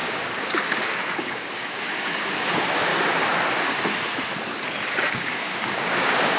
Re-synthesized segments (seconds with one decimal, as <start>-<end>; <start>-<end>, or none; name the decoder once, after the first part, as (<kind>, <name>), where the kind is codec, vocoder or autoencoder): 0.0-2.9 (codec, DAC); 4.9-6.4